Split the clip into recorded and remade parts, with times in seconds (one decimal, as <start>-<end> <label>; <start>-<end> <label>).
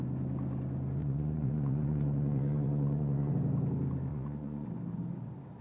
0.0-1.0 recorded; 1.0-3.3 remade; 3.3-4.1 recorded; 4.1-4.7 remade; 4.7-5.6 recorded